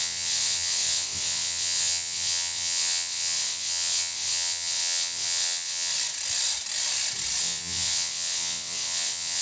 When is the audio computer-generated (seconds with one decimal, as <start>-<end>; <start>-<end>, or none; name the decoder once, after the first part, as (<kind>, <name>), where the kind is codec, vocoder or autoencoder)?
0.0-5.9 (vocoder, WaveNeXt); 7.4-9.4

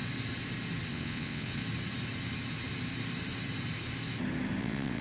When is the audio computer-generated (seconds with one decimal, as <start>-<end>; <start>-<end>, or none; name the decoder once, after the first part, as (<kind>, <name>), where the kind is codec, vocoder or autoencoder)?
0.9-1.6 (vocoder, WaveNeXt); 4.6-5.0

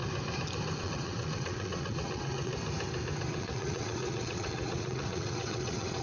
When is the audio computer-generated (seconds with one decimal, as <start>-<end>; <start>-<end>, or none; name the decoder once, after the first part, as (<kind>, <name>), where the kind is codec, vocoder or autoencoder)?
0.8-2.5 (vocoder, WaveNeXt); 3.3-6.0

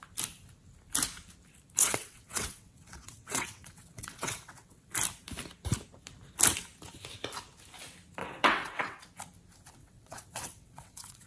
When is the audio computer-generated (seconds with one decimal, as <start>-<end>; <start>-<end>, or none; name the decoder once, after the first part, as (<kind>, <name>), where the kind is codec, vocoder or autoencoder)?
1.8-4.9 (vocoder, WaveNeXt); 8.2-9.0; 9.8-11.3

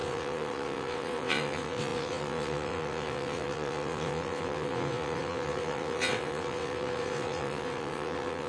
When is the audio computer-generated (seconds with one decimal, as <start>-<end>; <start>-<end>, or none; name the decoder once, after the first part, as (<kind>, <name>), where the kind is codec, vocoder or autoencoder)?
0.0-8.5 (vocoder, WaveNeXt)

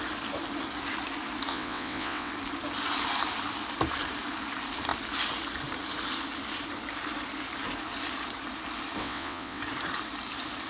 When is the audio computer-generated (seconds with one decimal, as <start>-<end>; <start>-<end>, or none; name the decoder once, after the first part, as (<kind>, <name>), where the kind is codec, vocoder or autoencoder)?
1.5-2.3 (vocoder, WaveNeXt); 9.0-9.6

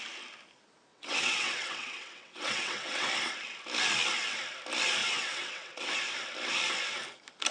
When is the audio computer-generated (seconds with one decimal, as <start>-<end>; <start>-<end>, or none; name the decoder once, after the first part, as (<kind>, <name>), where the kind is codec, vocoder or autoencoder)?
0.9-3.1 (vocoder, WaveNeXt); 5.0-5.9